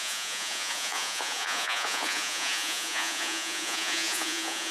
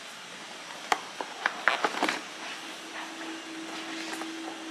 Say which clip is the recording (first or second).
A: second